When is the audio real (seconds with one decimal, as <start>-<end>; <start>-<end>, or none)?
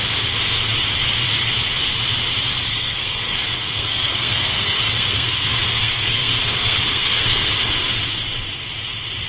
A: 0.0-2.7; 7.5-9.3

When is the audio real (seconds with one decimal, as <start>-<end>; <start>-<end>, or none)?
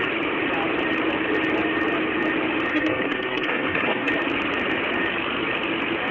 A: 0.0-2.7; 4.1-6.1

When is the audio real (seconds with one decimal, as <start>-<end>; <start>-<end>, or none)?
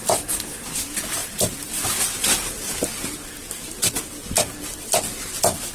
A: 0.0-5.7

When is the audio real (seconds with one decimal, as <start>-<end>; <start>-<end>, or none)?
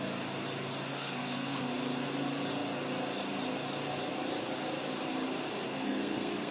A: 0.0-0.9; 1.7-5.7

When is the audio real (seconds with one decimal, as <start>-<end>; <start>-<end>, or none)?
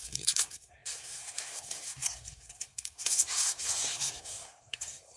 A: none